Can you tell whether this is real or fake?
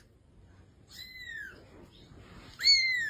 fake